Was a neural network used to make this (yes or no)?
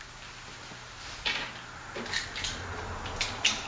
no